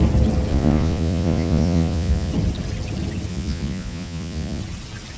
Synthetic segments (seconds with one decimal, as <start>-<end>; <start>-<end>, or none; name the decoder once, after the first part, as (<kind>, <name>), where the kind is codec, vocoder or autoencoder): 0.5-2.3 (vocoder, Vocos); 3.3-4.6